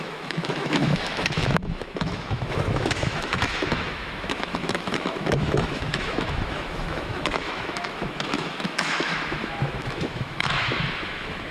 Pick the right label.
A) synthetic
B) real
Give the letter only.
A